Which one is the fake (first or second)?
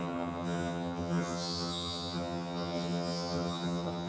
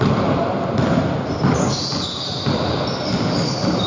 first